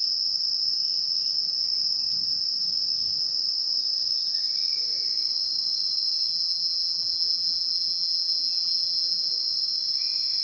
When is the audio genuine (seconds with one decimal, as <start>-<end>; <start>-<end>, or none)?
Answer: 0.0-6.3; 9.3-10.4